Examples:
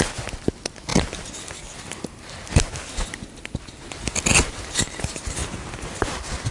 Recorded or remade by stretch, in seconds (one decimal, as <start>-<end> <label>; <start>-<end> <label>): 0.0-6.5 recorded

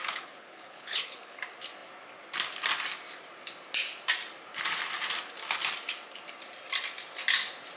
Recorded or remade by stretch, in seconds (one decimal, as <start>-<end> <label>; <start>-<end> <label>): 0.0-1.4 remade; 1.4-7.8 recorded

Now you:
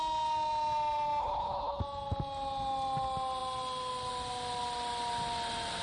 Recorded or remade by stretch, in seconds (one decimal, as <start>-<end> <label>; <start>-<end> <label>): 0.0-1.2 recorded; 1.2-1.8 remade; 1.8-5.8 recorded

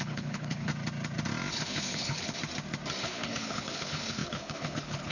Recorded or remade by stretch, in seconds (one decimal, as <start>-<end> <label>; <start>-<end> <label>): 0.0-0.7 remade; 0.7-1.5 recorded; 1.5-2.4 remade; 2.4-3.0 recorded; 3.0-5.1 remade

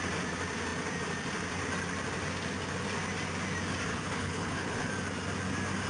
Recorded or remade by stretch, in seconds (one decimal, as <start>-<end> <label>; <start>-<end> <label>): 0.0-3.9 recorded; 3.9-4.9 remade; 4.9-5.9 recorded

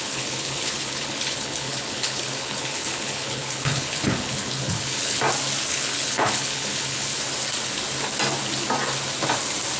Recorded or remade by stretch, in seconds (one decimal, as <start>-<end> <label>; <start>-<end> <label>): 0.0-5.2 remade; 5.2-5.7 recorded; 5.7-7.2 remade; 7.2-9.8 recorded

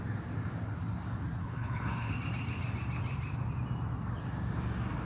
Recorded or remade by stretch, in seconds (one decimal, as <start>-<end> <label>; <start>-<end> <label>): 0.0-1.4 recorded; 1.4-2.1 remade; 2.1-5.1 recorded

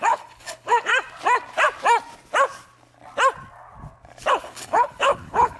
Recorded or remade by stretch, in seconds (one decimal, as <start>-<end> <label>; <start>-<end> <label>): 0.0-0.9 remade; 0.9-4.3 recorded; 4.3-5.6 remade